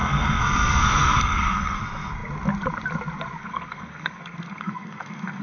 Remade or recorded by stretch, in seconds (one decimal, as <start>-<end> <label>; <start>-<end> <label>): 0.0-1.8 remade; 1.8-3.4 recorded; 3.4-5.4 remade